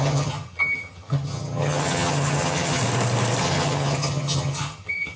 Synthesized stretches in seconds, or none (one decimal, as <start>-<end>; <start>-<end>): 0.0-2.8; 3.4-5.2